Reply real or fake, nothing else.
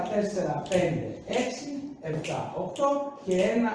real